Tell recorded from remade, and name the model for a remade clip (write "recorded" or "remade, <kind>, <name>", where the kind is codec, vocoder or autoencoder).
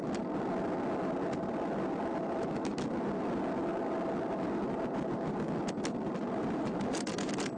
recorded